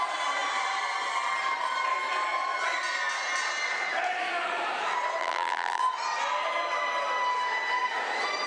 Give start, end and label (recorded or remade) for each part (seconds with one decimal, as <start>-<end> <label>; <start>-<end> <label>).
0.0-5.2 recorded; 5.2-5.8 remade; 5.8-8.5 recorded